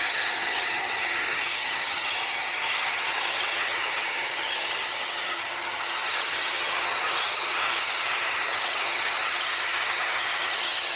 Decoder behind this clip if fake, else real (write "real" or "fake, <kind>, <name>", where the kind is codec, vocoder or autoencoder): fake, vocoder, HiFi-GAN